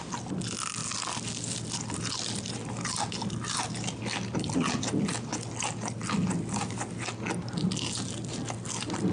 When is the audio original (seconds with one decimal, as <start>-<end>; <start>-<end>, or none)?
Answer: 0.0-9.1